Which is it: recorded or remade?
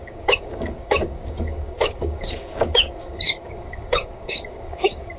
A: remade